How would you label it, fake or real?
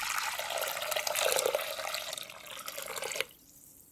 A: fake